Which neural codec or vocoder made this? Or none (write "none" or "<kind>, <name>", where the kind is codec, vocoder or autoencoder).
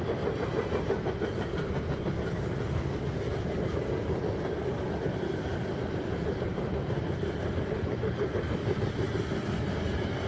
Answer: none